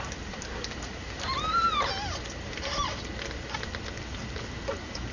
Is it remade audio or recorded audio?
recorded